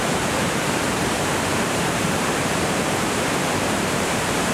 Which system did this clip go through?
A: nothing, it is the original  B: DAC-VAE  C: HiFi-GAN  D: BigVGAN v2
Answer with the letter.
D